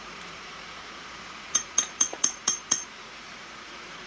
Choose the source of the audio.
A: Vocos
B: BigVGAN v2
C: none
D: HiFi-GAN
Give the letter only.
A